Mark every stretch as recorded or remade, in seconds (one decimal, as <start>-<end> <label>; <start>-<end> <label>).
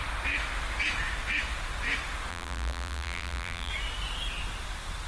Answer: 0.0-2.3 recorded; 2.3-3.7 remade; 3.7-5.1 recorded